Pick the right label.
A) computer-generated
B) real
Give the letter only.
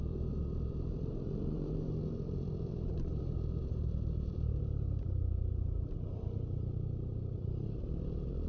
A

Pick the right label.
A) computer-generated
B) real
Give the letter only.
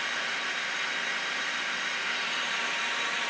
B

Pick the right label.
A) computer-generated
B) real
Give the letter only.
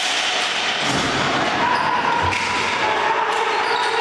B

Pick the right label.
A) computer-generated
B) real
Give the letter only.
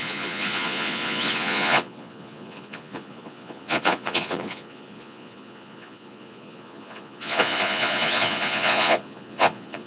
A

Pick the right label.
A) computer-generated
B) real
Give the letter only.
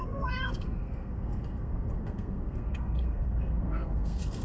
A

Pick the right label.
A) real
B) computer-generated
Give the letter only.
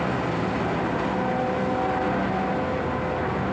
A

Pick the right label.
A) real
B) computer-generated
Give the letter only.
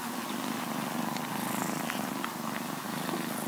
A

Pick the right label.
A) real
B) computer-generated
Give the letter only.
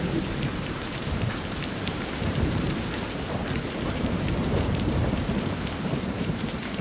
B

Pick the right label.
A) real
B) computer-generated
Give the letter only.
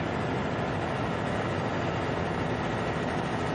A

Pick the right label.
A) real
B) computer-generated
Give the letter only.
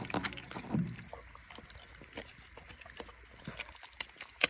A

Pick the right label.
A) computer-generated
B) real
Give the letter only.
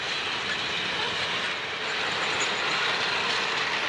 B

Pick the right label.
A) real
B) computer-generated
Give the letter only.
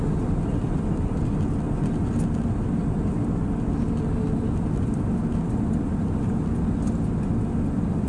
A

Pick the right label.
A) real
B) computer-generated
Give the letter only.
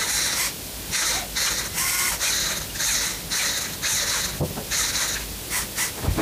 A